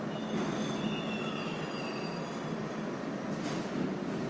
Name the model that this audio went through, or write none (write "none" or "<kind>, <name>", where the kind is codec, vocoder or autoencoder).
none